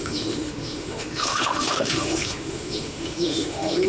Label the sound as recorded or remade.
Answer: remade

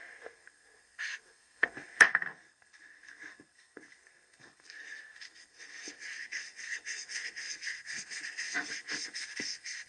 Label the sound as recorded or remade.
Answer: remade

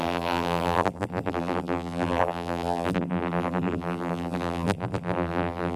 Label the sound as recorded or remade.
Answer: remade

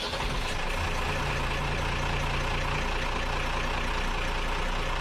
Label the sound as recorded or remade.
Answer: recorded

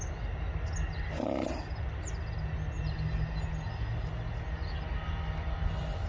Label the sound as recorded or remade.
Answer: recorded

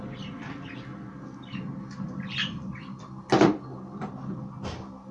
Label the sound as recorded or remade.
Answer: recorded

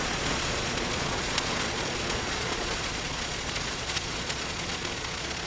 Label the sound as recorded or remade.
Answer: remade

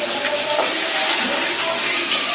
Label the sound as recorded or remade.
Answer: recorded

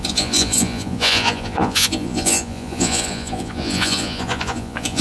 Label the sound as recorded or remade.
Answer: remade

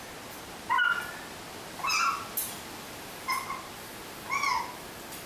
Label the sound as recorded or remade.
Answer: recorded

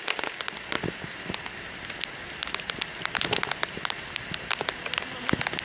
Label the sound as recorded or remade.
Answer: recorded